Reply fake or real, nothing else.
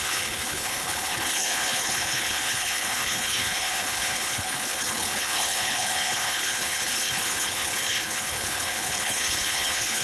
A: fake